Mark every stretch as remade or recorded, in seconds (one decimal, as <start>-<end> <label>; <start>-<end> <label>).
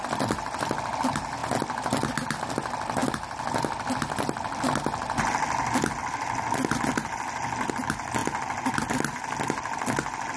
0.0-10.4 recorded